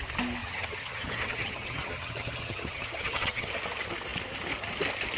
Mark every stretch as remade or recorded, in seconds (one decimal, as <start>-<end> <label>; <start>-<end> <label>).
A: 0.0-0.4 recorded; 0.4-3.5 remade; 3.5-5.2 recorded